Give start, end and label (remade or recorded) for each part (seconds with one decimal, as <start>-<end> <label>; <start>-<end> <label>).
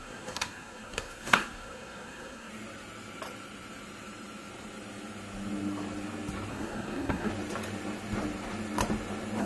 0.0-2.5 remade; 2.5-6.5 recorded; 6.5-7.3 remade; 7.3-9.4 recorded